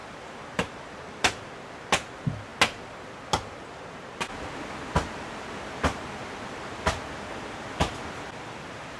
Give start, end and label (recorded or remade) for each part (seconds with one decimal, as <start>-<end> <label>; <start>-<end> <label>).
0.0-1.5 remade; 1.5-9.0 recorded